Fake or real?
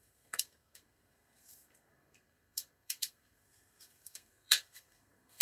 fake